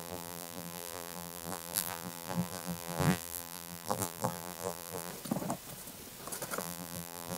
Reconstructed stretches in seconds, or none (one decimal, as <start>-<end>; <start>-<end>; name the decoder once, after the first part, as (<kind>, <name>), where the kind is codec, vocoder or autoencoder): 0.0-5.1 (vocoder, BigVGAN v2); 6.6-7.4